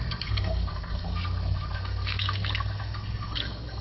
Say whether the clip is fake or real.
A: fake